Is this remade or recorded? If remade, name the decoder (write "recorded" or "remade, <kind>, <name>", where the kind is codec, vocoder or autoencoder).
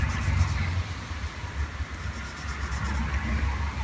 recorded